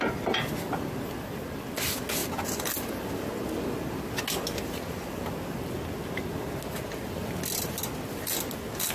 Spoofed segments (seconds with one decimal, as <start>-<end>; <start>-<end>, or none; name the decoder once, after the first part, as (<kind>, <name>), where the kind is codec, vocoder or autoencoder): none